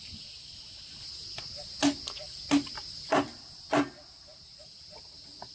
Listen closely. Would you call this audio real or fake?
real